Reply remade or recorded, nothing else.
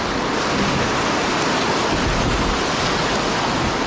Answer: recorded